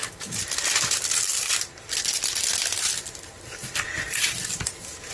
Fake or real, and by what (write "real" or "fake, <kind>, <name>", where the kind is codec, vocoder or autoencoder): real